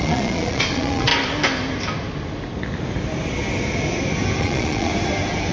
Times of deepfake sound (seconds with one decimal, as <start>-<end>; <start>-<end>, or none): 0.0-1.1; 4.4-4.9